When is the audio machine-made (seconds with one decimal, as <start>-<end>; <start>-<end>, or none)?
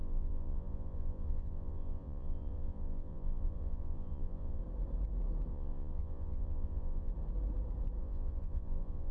0.0-4.6; 5.5-7.1; 8.0-9.1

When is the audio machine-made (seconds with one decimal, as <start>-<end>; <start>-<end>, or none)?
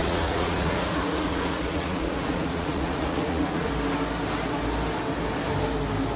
0.0-3.7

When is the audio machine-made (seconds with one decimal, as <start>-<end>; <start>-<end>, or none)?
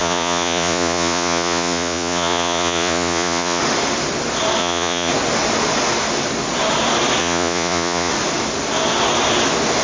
0.0-3.6; 4.6-5.1; 7.2-8.1